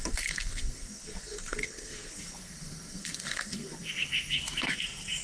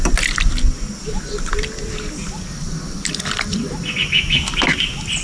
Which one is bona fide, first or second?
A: second